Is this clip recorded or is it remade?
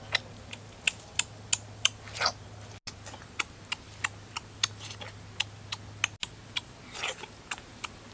recorded